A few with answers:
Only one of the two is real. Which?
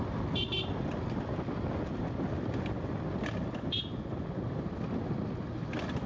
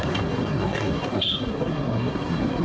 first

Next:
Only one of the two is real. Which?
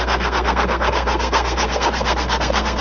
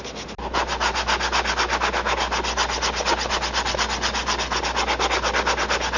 second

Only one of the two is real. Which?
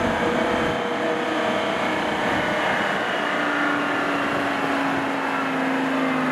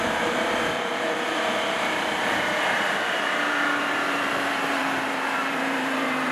first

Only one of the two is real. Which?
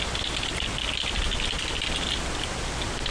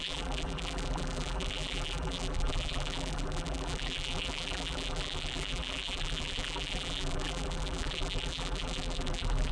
first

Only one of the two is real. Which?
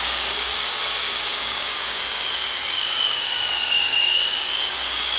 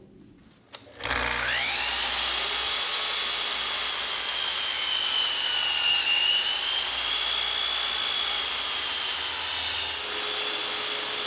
second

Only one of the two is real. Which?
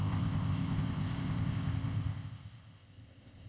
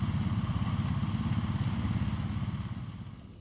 second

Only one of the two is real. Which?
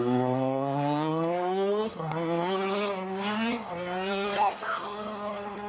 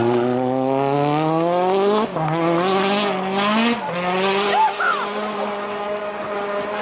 second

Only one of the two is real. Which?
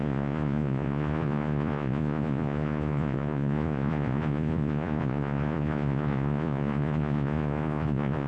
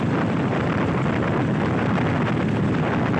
second